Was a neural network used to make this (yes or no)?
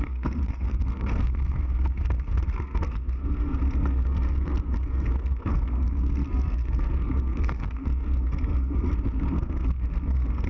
yes